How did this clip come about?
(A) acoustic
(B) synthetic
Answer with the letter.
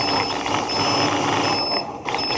A